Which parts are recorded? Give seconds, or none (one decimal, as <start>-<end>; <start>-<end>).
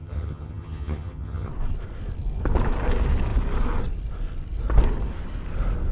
1.5-5.9